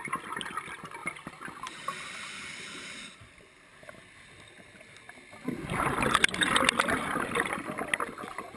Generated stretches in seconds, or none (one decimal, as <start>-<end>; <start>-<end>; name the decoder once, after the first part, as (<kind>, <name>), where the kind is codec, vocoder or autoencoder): none